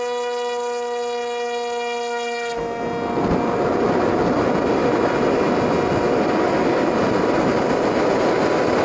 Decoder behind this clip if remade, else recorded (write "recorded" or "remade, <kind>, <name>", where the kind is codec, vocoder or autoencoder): recorded